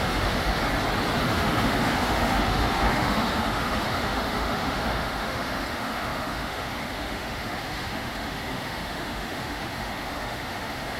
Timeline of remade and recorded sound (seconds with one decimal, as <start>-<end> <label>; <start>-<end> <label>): 0.0-0.6 remade; 0.6-1.2 recorded; 1.2-11.0 remade

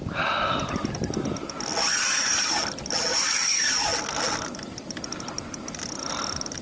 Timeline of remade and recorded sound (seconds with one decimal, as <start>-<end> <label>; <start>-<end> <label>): 0.0-6.6 recorded